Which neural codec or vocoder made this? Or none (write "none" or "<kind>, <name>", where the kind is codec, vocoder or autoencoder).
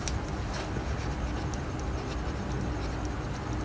none